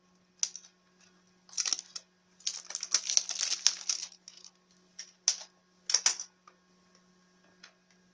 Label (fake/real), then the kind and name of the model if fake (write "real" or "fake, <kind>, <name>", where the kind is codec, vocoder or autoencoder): real